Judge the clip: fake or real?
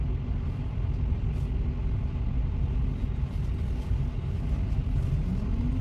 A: real